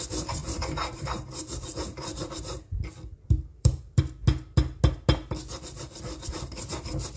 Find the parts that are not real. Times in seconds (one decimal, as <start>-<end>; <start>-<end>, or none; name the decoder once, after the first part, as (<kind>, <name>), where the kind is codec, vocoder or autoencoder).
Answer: 0.4-1.3 (vocoder, BigVGAN v2); 1.9-2.6; 3.5-4.0

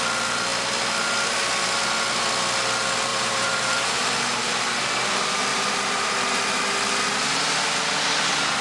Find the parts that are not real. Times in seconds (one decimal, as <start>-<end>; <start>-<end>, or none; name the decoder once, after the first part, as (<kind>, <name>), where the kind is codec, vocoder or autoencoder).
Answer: 3.1-4.0 (vocoder, BigVGAN v2); 5.5-6.4

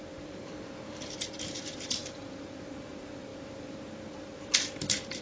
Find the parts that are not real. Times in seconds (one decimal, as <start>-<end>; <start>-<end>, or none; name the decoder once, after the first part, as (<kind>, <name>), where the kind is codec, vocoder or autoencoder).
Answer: 0.0-5.2 (vocoder, BigVGAN v2)

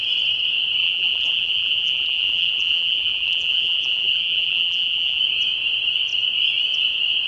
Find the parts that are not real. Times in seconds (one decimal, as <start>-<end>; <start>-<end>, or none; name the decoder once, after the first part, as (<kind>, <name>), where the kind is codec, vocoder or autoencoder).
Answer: 0.8-5.2 (vocoder, BigVGAN v2)

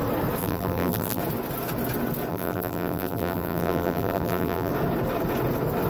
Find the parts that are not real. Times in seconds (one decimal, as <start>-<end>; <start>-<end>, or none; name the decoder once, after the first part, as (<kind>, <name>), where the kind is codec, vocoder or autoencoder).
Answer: 0.4-1.2 (vocoder, BigVGAN v2); 2.3-4.7

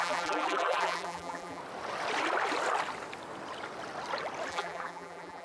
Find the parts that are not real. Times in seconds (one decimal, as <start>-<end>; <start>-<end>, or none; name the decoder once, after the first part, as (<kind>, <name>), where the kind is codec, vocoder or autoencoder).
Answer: 0.0-1.6 (vocoder, BigVGAN v2); 4.5-5.4

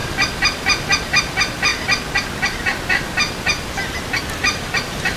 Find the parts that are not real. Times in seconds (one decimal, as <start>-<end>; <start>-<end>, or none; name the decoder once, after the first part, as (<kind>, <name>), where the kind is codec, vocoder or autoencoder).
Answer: 0.0-1.7 (vocoder, BigVGAN v2); 4.4-5.2

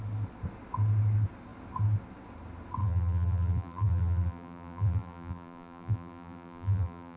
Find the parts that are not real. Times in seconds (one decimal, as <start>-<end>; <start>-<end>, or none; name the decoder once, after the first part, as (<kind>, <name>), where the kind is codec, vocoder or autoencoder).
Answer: 2.8-7.2 (vocoder, BigVGAN v2)